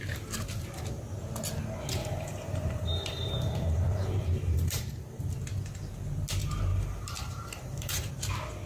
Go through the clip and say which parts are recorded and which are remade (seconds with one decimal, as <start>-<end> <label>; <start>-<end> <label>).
0.0-2.0 recorded; 2.0-5.2 remade; 5.2-6.7 recorded; 6.7-8.1 remade; 8.1-8.7 recorded